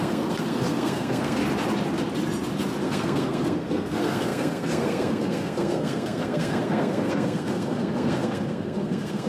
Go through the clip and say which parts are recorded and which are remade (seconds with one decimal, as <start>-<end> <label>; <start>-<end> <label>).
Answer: 0.0-1.4 remade; 1.4-2.8 recorded; 2.8-9.3 remade